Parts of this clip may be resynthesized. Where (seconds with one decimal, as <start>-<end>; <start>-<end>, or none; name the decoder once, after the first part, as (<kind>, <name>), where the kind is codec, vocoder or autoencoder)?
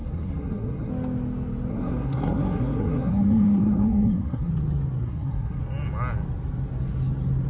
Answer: 0.0-0.9 (codec, SNAC); 1.7-4.5; 5.0-5.6